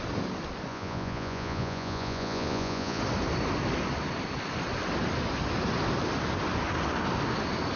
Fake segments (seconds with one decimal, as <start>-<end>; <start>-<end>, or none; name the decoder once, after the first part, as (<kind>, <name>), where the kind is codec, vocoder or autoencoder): 0.7-3.0 (vocoder, Vocos)